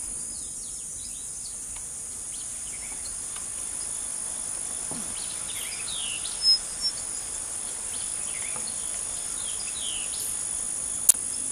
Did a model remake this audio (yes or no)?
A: no